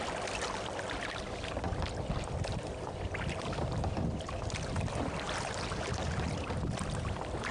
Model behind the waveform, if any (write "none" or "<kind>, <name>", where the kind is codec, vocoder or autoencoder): none